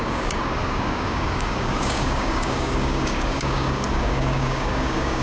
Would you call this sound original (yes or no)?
no